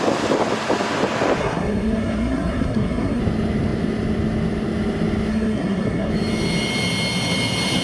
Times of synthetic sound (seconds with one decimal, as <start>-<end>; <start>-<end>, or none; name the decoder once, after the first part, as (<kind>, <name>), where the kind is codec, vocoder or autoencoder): 1.4-3.2 (codec, SNAC); 5.3-6.1